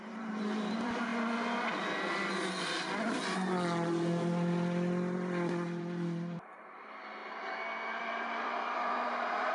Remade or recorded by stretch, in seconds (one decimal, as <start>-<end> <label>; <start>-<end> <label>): 0.0-1.1 remade; 1.1-5.8 recorded; 5.8-7.2 remade; 7.2-8.0 recorded; 8.0-9.5 remade